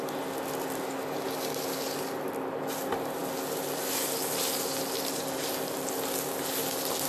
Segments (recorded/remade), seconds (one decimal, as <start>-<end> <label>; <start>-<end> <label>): 0.0-7.1 recorded